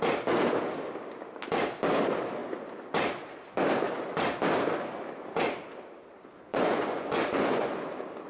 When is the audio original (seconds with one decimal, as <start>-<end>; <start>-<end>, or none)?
0.0-6.5; 7.7-8.3